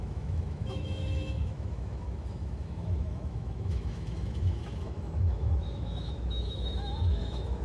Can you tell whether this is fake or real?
fake